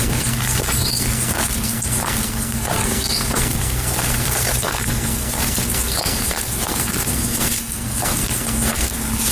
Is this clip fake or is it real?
fake